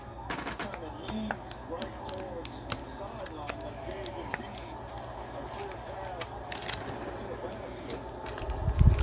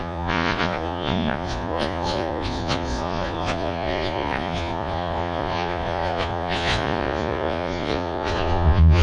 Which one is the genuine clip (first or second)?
first